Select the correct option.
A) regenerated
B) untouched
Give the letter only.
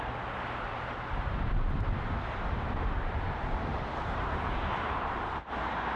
A